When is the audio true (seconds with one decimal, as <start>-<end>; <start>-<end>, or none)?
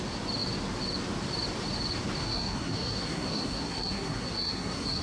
0.0-2.2